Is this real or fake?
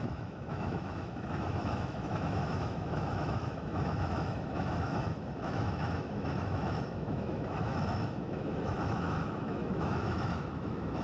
fake